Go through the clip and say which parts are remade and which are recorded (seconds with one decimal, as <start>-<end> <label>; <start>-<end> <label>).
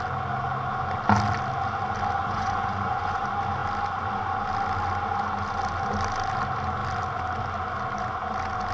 0.0-2.2 recorded; 2.2-3.2 remade; 3.2-8.7 recorded